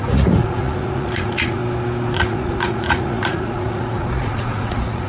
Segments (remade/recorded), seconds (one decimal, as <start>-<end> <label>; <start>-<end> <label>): 0.0-1.6 remade; 1.6-2.1 recorded; 2.1-5.1 remade